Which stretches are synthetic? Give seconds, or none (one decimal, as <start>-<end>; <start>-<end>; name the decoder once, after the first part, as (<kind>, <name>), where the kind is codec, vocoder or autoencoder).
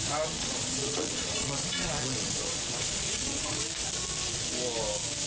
0.4-3.6 (vocoder, Vocos)